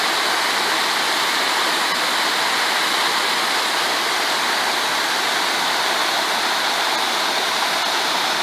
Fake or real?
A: real